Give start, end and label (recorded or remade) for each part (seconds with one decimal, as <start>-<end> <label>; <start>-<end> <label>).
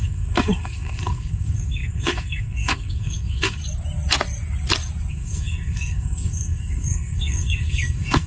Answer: 0.0-3.6 remade; 3.6-5.1 recorded; 5.1-8.3 remade